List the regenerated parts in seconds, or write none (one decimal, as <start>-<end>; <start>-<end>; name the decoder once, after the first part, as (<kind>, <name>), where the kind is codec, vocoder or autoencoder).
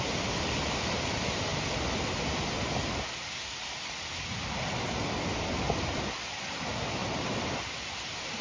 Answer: none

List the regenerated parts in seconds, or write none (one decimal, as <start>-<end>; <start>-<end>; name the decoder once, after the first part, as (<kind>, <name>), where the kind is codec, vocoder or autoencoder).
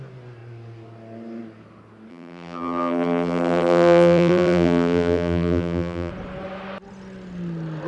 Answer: 2.1-6.1 (vocoder, BigVGAN v2)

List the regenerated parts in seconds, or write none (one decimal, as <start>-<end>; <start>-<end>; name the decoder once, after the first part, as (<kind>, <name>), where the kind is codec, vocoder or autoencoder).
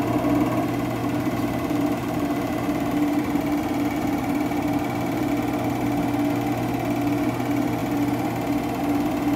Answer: 1.0-5.3 (vocoder, BigVGAN v2)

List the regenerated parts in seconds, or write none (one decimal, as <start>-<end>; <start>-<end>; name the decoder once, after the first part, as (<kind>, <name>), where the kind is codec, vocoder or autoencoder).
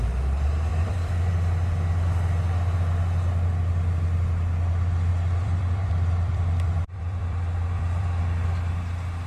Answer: 0.7-1.3 (vocoder, BigVGAN v2); 5.1-8.2